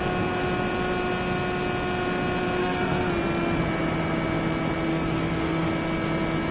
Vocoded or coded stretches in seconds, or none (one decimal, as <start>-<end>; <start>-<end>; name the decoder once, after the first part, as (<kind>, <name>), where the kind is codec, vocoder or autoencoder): 2.6-3.1 (codec, SNAC); 4.9-5.7